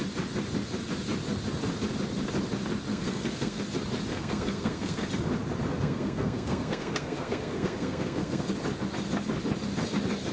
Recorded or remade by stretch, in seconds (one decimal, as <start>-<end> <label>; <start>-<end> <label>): 0.0-2.9 recorded; 2.9-3.6 remade; 3.6-4.1 recorded; 4.1-5.1 remade; 5.1-5.7 recorded; 5.7-8.5 remade; 8.5-10.3 recorded